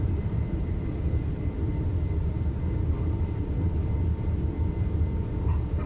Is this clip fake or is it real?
real